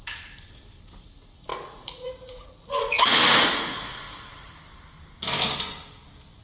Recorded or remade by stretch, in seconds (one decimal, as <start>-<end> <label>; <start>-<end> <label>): 0.0-1.5 recorded; 1.5-4.5 remade; 4.5-6.4 recorded